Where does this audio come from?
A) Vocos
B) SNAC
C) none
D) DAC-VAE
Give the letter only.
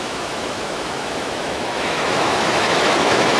D